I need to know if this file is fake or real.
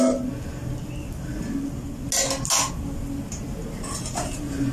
real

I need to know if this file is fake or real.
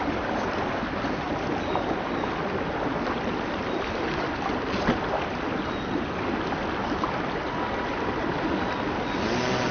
real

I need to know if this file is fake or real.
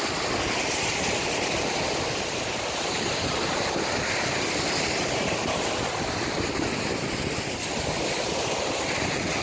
real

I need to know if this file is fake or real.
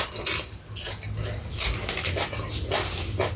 real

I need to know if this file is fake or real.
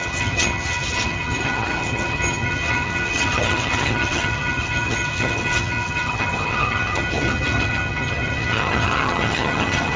fake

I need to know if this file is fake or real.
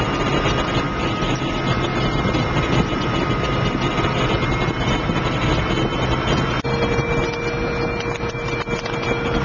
real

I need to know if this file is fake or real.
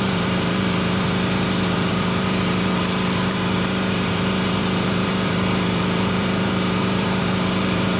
fake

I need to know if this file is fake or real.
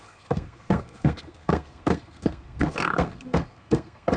fake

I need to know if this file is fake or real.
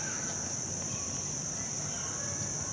real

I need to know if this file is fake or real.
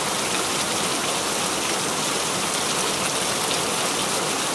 fake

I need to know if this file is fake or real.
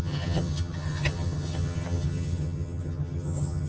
fake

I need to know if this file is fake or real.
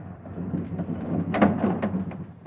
real